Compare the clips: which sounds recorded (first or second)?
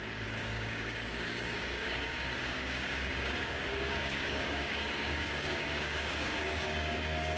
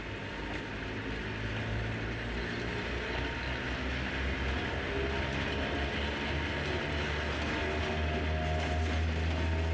second